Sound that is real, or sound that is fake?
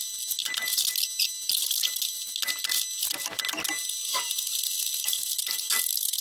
real